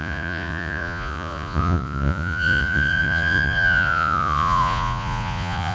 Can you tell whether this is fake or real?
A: fake